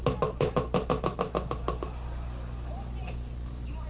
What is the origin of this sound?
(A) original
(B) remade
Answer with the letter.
A